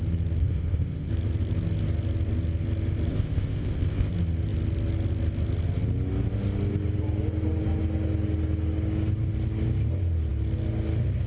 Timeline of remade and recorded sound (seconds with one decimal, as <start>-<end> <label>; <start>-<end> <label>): 0.0-0.4 recorded; 0.4-1.1 remade; 1.1-3.1 recorded; 3.1-4.1 remade; 4.1-11.3 recorded

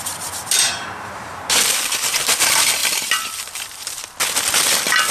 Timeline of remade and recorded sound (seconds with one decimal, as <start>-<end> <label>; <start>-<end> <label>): 0.0-0.4 recorded; 0.4-2.3 remade; 2.3-2.8 recorded; 2.8-4.0 remade; 4.0-5.1 recorded